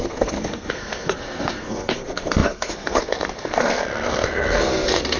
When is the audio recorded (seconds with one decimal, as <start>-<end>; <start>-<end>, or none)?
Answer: none